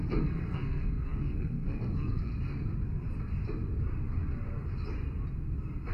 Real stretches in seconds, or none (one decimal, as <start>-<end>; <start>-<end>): 2.3-5.9